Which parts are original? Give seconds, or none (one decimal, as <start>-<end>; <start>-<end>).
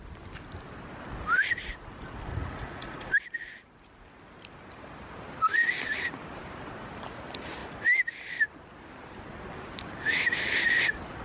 0.0-2.3; 3.1-11.2